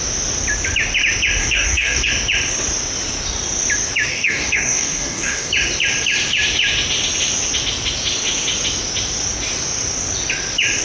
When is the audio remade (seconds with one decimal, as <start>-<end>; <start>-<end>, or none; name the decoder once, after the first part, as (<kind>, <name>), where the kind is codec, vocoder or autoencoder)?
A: 1.4-2.1 (codec, DAC); 4.1-5.5